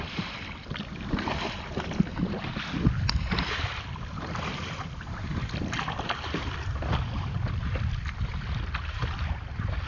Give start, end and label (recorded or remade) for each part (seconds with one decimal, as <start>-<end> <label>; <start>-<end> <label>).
0.0-9.9 recorded